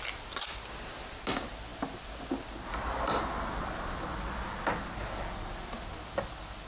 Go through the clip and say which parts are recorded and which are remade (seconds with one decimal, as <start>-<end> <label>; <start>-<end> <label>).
0.0-6.7 recorded